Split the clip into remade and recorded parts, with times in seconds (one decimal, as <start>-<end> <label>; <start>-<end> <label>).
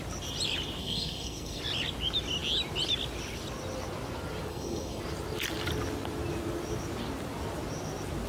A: 0.0-0.8 recorded; 0.8-1.6 remade; 1.6-4.5 recorded; 4.5-5.0 remade; 5.0-8.3 recorded